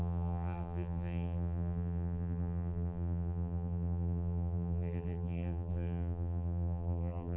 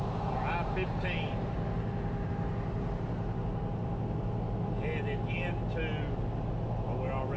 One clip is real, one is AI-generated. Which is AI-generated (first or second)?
first